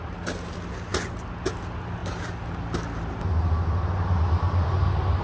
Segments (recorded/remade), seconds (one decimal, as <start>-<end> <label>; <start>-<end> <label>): 0.0-5.2 recorded